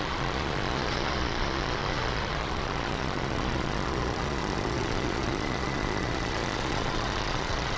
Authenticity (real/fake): fake